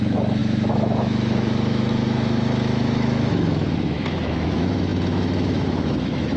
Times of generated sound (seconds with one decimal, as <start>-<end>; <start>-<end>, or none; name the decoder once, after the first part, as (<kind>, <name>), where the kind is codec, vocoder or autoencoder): 0.0-6.4 (autoencoder, DAC-VAE)